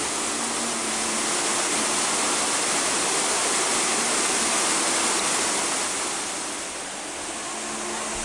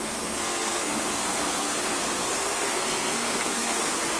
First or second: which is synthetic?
second